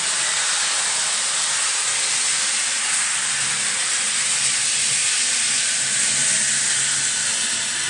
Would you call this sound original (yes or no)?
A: yes